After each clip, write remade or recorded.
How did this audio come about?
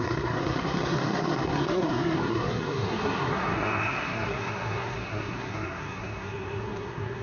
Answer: remade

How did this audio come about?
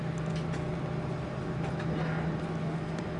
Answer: recorded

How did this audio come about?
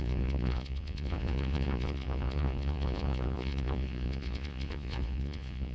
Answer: remade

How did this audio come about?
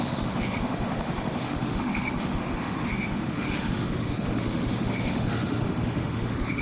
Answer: remade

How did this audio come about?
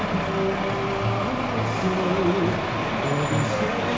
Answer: recorded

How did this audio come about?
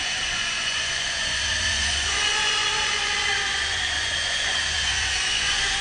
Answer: remade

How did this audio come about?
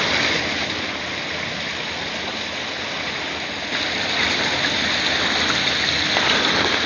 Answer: recorded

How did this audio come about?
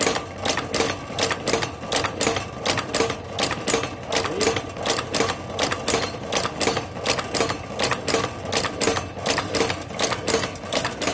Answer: recorded